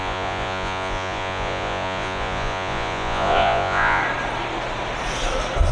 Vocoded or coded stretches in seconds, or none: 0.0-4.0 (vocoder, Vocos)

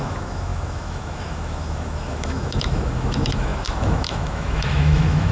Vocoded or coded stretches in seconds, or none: 0.0-5.3 (autoencoder, DAC-VAE)

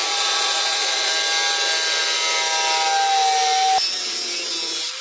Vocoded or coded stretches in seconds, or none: 0.0-1.1 (vocoder, Vocos)

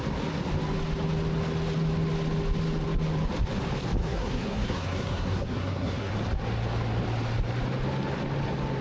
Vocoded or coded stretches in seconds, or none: 4.0-6.1 (codec, SNAC)